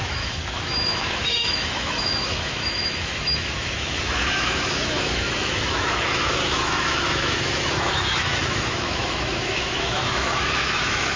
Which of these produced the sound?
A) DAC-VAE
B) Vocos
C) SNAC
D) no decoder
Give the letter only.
A